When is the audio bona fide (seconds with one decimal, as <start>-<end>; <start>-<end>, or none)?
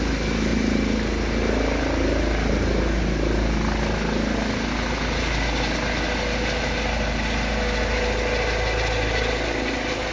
0.0-10.1